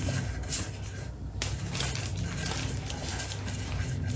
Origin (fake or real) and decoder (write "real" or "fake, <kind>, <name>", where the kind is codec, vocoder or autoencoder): real